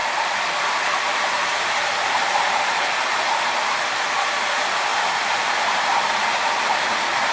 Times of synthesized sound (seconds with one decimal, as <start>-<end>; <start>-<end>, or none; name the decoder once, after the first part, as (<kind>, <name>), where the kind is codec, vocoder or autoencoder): 0.0-3.8 (vocoder, BigVGAN v2)